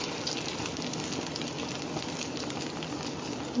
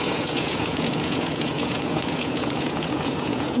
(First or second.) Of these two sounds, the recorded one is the first